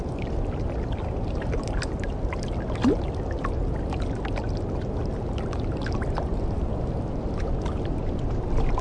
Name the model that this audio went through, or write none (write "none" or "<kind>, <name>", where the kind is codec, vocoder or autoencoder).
none